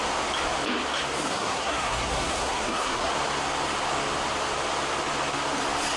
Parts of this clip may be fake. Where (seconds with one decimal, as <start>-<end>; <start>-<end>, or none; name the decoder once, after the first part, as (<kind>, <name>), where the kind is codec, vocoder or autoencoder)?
1.3-3.1 (codec, SNAC)